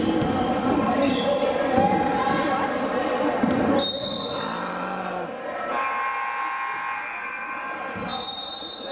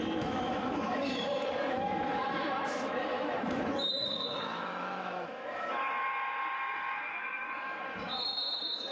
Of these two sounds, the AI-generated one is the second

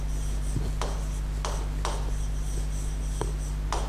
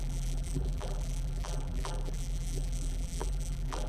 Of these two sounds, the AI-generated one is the second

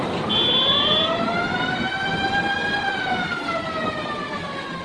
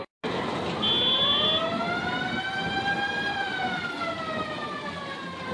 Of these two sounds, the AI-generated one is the first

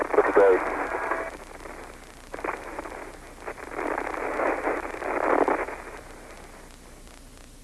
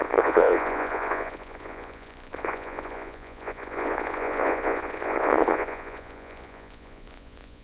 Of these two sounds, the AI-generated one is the second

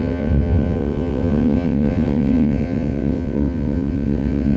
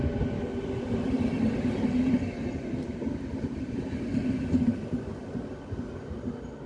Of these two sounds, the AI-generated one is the first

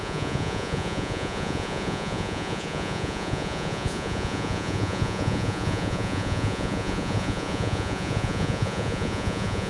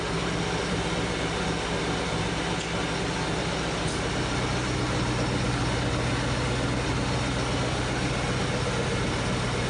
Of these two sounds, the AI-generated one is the first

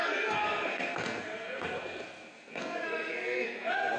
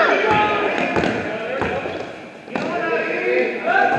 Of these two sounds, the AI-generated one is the first